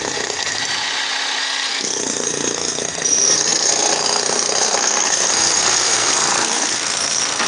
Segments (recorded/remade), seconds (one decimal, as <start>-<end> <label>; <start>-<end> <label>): 0.0-0.6 remade; 0.6-1.4 recorded; 1.4-7.5 remade